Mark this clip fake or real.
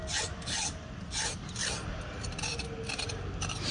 real